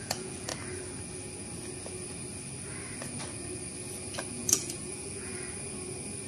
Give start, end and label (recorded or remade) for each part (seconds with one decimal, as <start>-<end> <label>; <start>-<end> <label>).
0.0-0.5 remade; 0.5-4.3 recorded; 4.3-5.3 remade; 5.3-6.3 recorded